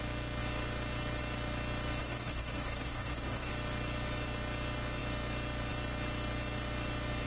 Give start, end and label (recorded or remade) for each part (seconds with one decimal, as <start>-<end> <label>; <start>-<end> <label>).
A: 0.0-2.0 recorded; 2.0-3.5 remade; 3.5-7.3 recorded